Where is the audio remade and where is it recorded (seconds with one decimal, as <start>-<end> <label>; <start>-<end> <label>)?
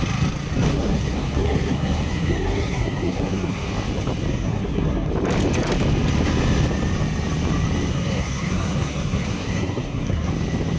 0.0-0.7 recorded; 0.7-3.7 remade; 3.7-4.3 recorded; 4.3-5.1 remade; 5.1-7.9 recorded; 7.9-10.3 remade; 10.3-10.8 recorded